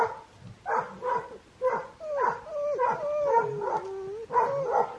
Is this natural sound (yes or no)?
yes